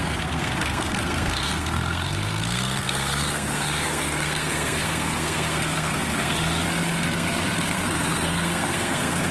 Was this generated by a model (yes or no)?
yes